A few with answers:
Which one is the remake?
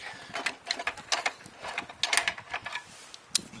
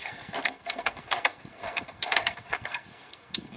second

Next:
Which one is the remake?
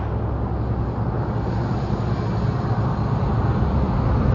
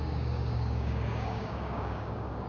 second